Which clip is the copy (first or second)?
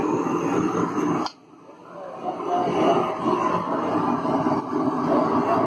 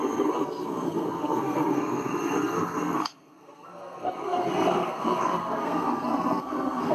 second